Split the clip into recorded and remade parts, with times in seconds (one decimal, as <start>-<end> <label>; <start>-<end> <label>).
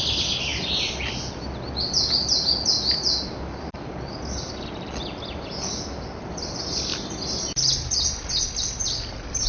0.0-9.5 recorded